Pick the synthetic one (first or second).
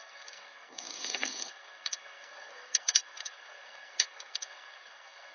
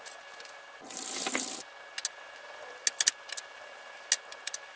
first